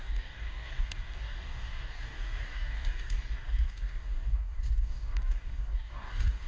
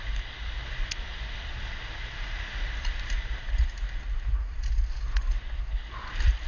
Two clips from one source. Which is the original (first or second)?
second